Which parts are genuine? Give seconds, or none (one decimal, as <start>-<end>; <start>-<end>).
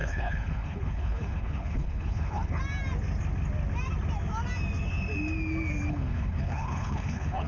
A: 2.6-5.9